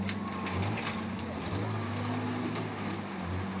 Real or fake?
real